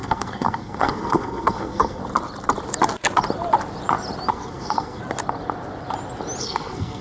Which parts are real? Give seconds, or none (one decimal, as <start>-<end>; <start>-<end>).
2.0-4.3; 5.0-6.4